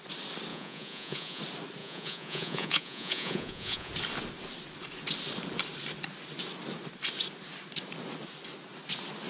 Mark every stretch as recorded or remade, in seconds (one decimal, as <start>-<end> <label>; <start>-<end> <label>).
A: 0.0-0.5 recorded; 0.5-1.4 remade; 1.4-1.8 recorded; 1.8-3.9 remade; 3.9-9.3 recorded